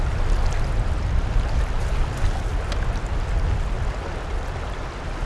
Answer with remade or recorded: recorded